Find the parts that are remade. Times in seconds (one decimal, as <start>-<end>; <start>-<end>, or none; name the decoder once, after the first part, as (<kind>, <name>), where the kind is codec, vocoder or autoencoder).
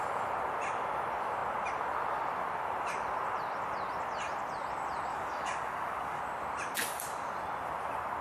5.1-6.2 (codec, DAC)